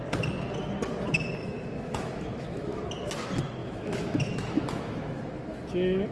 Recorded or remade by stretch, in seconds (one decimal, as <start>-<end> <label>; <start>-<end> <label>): 0.0-1.4 recorded; 1.4-2.8 remade; 2.8-3.6 recorded; 3.6-6.1 remade